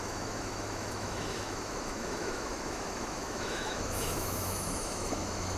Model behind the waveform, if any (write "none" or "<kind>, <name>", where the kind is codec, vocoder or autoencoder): autoencoder, DAC-VAE